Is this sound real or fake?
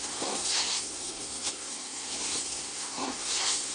fake